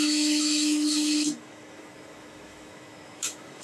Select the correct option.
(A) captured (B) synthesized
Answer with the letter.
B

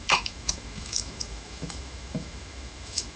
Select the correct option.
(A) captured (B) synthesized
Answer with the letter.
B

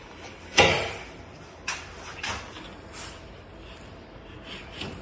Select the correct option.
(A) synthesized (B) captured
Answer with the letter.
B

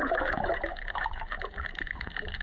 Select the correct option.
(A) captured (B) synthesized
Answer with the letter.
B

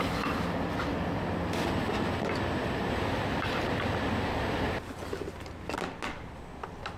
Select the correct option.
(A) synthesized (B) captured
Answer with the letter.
B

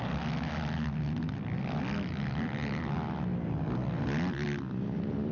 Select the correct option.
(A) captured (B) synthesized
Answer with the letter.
A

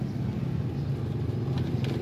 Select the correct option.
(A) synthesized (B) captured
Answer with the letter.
B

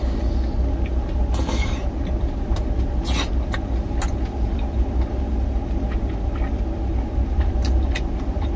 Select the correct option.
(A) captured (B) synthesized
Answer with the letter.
A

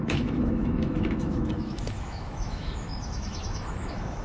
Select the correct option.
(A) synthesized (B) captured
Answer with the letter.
A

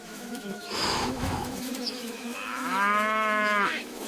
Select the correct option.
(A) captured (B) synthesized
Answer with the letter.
B